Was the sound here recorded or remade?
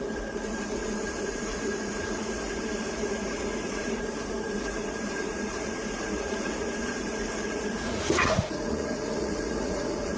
remade